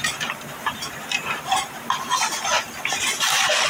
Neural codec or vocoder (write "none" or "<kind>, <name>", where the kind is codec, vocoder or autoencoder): vocoder, BigVGAN v2